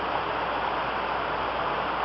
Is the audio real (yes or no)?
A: yes